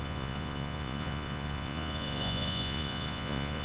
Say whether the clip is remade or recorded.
remade